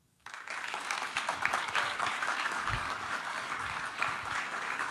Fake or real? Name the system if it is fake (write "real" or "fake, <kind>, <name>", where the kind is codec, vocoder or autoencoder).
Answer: fake, codec, DAC